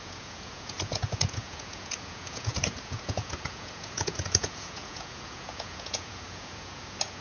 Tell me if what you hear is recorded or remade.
remade